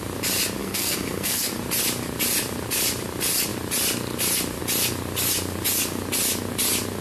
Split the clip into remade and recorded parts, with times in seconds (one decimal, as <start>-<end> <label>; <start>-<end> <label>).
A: 0.0-0.6 recorded; 0.6-1.5 remade; 1.5-7.0 recorded